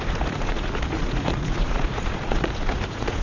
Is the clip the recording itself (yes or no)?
no